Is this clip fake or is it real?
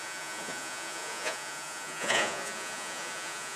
fake